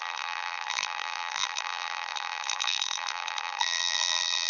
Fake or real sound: fake